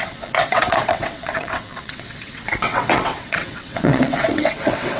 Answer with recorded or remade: remade